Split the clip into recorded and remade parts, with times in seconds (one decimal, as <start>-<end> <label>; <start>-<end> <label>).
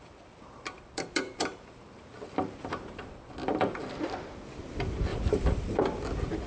0.0-3.9 remade; 3.9-5.1 recorded; 5.1-5.8 remade; 5.8-6.5 recorded